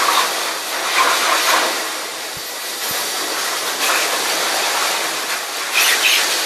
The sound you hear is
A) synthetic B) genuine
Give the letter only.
B